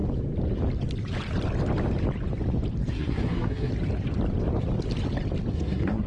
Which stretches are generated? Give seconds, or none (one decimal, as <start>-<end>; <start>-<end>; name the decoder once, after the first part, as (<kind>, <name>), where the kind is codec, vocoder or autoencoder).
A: 2.9-3.7 (codec, SNAC); 5.5-6.1